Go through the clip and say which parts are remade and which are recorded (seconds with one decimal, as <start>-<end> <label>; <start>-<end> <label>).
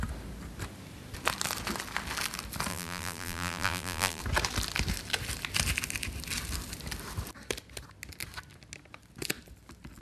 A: 0.0-2.7 recorded; 2.7-4.2 remade; 4.2-10.0 recorded